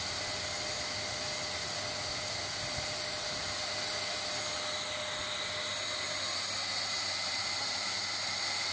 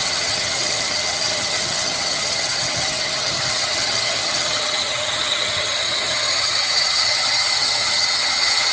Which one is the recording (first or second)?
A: first